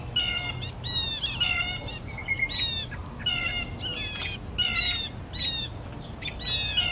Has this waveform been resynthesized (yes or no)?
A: no